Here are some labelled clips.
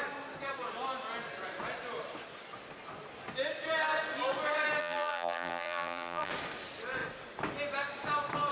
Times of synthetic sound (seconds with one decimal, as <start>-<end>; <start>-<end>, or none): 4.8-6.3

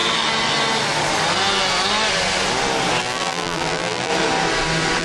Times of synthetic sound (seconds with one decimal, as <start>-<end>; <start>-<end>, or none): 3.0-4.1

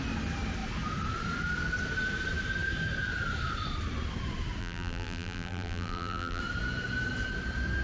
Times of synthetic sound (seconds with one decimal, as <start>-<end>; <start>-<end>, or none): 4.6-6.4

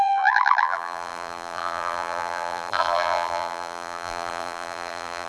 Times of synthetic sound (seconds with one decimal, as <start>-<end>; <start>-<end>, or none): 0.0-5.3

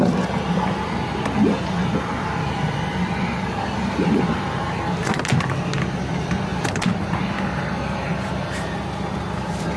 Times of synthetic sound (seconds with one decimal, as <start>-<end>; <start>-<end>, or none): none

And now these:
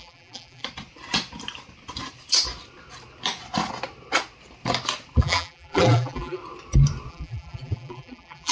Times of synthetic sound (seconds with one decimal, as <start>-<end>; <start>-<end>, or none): 0.0-0.6; 5.2-6.4; 7.1-8.5

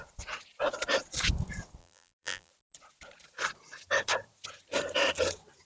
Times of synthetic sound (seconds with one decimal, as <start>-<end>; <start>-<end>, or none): 1.8-2.5

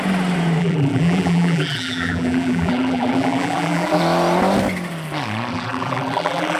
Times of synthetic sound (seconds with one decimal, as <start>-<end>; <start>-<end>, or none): 0.6-4.0; 5.5-6.6